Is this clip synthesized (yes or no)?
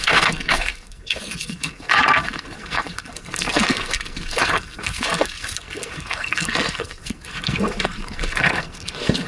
yes